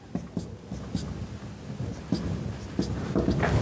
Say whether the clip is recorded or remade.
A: recorded